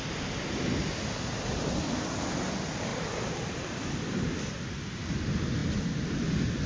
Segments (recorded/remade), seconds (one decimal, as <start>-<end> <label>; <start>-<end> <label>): 0.0-6.7 recorded